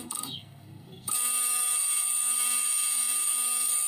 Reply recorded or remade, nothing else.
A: remade